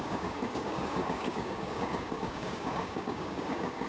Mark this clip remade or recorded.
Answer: remade